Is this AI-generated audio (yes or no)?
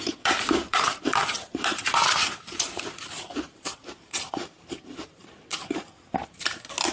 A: yes